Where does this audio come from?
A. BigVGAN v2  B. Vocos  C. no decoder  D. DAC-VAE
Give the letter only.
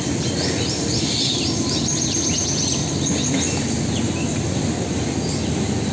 C